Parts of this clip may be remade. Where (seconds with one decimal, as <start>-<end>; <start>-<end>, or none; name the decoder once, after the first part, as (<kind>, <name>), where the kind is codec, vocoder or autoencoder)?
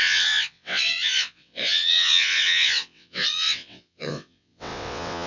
0.0-5.3 (vocoder, WaveNeXt)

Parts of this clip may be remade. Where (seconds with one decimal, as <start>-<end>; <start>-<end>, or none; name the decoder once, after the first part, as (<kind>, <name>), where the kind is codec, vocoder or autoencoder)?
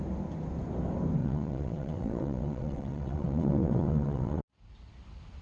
1.2-4.4 (vocoder, WaveNeXt)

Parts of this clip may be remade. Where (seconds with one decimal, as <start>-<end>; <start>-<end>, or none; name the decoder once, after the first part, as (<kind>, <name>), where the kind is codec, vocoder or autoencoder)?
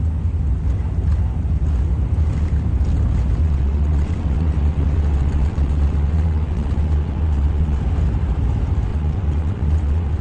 3.4-7.8 (vocoder, WaveNeXt); 8.9-10.2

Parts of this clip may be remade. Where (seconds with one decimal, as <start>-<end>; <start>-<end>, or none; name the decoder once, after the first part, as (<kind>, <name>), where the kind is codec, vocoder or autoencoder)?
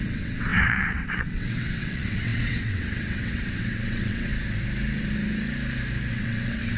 0.0-4.3 (vocoder, WaveNeXt); 6.1-6.8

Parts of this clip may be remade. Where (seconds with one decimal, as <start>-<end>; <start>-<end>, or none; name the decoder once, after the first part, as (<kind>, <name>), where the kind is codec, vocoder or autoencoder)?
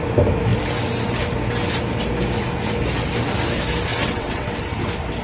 3.9-4.5 (vocoder, WaveNeXt)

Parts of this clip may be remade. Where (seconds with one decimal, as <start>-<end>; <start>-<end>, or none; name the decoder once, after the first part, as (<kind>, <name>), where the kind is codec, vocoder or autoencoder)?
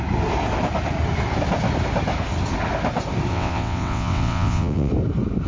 3.3-4.9 (vocoder, WaveNeXt)